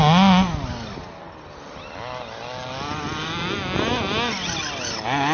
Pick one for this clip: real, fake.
real